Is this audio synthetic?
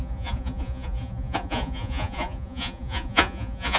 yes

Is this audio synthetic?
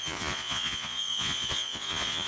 yes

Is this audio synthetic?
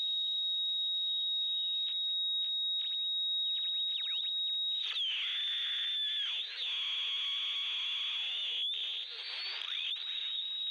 no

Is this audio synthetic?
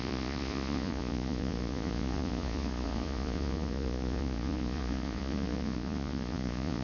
yes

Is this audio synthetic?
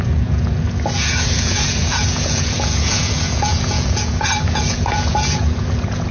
yes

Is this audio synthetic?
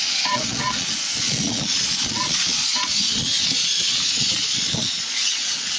yes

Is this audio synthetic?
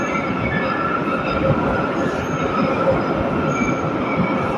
no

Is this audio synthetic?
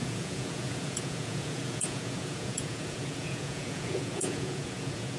yes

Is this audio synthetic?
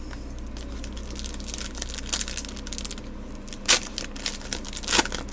no